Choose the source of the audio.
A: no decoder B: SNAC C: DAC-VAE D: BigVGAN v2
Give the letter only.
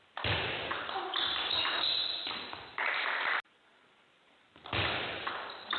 A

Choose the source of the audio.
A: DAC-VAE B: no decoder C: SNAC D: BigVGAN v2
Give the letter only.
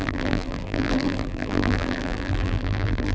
D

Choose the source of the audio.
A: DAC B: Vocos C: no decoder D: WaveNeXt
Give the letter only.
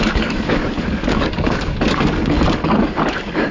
A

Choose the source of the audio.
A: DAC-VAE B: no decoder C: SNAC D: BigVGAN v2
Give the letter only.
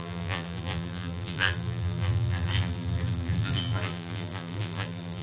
D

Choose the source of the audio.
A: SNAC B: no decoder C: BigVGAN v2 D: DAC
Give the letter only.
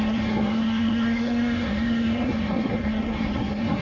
A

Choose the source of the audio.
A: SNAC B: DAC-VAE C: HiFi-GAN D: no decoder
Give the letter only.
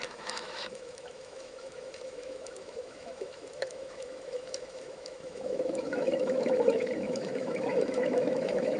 B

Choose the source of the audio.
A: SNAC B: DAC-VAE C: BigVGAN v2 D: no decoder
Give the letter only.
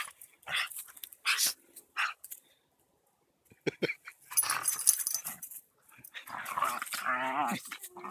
D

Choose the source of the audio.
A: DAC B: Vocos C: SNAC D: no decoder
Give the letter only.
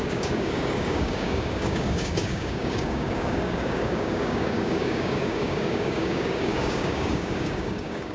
A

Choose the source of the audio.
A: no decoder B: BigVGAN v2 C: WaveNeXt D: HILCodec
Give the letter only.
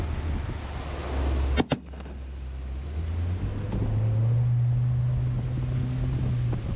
A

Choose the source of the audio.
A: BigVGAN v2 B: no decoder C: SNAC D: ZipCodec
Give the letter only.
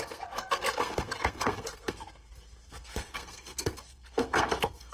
C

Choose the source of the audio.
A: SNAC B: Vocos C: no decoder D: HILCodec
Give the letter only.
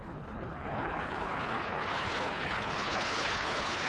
D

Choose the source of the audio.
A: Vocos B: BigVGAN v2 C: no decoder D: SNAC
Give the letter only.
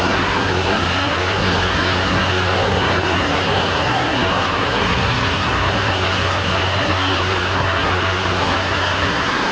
D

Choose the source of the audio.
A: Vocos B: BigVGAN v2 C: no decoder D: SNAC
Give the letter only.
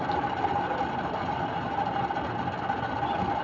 C